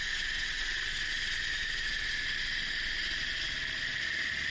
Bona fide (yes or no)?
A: yes